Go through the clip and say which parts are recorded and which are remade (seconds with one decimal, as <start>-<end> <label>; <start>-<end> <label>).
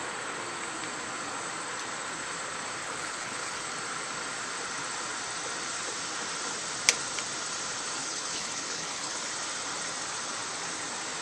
0.0-2.8 recorded; 2.8-3.7 remade; 3.7-8.0 recorded; 8.0-9.3 remade; 9.3-11.2 recorded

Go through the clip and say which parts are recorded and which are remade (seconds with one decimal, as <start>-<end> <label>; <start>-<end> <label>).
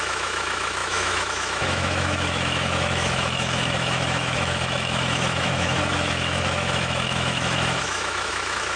0.0-8.8 remade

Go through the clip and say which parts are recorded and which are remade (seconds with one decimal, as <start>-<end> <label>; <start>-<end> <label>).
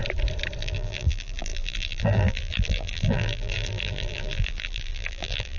0.0-0.6 recorded; 0.6-5.6 remade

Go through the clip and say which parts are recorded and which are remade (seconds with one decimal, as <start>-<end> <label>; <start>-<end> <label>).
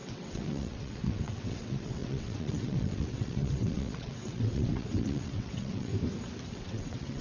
0.0-5.9 remade; 5.9-6.5 recorded; 6.5-7.2 remade